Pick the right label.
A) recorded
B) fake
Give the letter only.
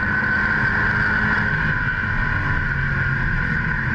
A